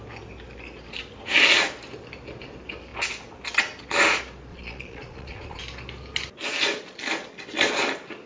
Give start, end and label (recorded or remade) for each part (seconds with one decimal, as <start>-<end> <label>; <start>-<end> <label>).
0.0-4.5 recorded; 4.5-5.6 remade; 5.6-8.3 recorded